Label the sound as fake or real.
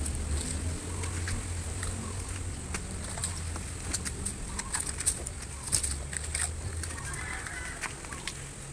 real